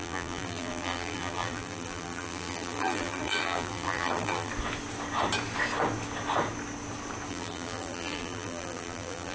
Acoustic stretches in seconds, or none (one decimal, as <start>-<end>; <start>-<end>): 4.5-7.3